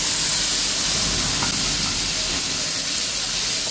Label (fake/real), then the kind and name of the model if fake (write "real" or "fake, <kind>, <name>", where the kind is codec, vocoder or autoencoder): real